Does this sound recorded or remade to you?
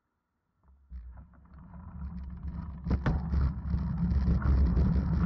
recorded